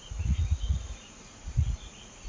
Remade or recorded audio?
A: remade